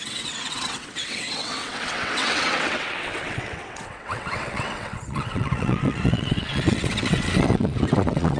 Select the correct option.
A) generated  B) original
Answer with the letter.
A